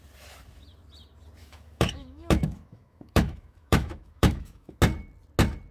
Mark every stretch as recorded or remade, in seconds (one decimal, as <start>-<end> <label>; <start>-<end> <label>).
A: 0.0-1.4 recorded; 1.4-4.8 remade; 4.8-5.7 recorded